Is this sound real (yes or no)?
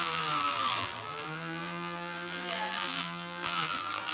no